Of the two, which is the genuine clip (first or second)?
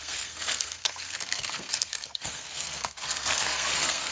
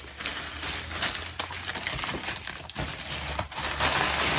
second